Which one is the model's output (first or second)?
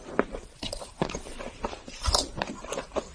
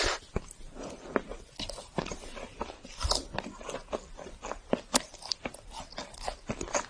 first